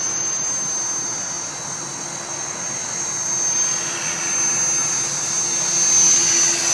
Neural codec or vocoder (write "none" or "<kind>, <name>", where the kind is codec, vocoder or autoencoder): none